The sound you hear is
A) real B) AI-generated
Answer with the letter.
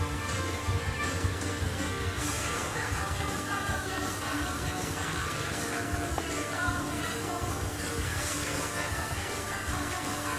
B